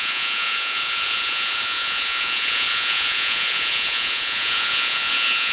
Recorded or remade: remade